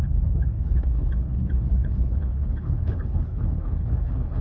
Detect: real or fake fake